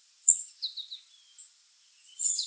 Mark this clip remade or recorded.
recorded